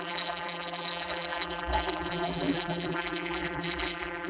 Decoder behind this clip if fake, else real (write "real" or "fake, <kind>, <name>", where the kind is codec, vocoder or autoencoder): fake, vocoder, BigVGAN v2